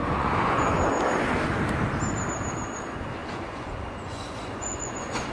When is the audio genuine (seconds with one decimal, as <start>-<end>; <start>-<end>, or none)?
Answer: 0.7-3.2